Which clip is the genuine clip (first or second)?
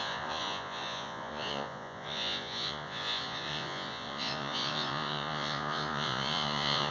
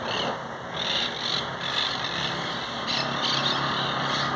second